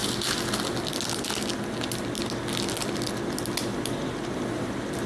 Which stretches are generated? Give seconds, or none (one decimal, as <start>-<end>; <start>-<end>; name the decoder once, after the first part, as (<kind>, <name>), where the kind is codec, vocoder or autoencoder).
3.1-5.1 (vocoder, BigVGAN v2)